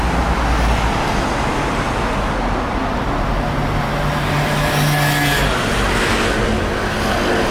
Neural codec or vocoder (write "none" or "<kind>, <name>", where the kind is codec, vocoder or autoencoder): none